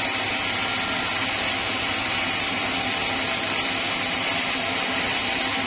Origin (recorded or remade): recorded